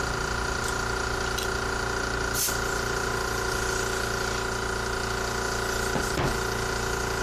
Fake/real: real